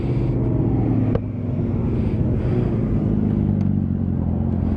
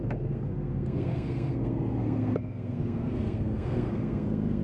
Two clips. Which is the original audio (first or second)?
first